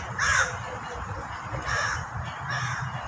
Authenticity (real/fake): fake